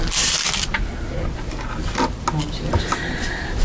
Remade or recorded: recorded